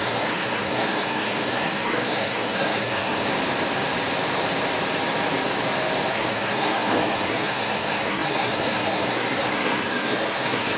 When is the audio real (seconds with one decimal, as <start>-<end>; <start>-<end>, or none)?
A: 3.3-6.1